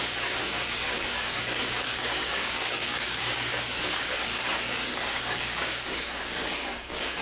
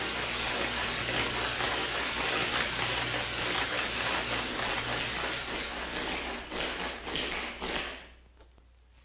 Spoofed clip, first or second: first